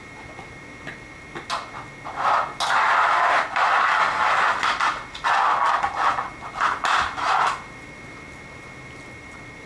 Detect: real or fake real